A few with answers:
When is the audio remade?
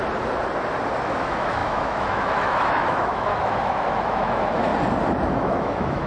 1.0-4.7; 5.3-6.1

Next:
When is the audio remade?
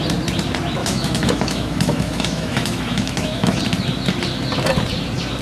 0.8-3.6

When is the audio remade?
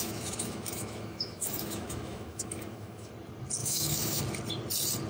0.0-3.1; 3.6-4.2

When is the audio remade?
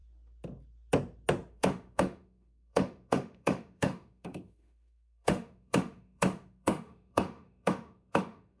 1.5-8.6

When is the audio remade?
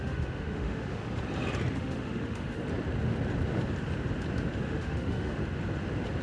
0.0-1.0; 1.7-2.6; 4.6-5.4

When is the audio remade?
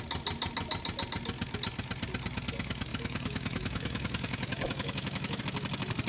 2.9-5.4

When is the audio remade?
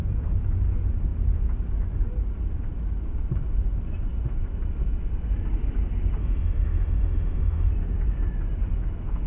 6.2-7.7